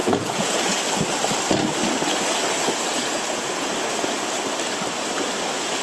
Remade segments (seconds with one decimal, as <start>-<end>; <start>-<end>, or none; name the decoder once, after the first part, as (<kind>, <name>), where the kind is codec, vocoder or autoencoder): 0.0-0.8 (vocoder, Vocos); 2.9-3.7